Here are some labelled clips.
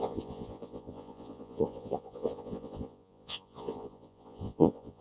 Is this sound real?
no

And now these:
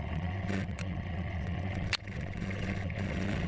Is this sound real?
no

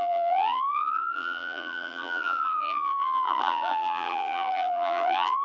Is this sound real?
no